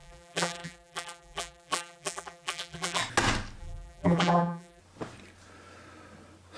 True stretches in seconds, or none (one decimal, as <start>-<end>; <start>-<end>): 3.0-3.6; 4.8-6.6